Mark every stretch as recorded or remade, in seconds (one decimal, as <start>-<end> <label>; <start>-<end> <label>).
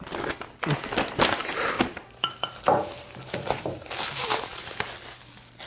0.0-1.4 recorded; 1.4-4.8 remade; 4.8-5.7 recorded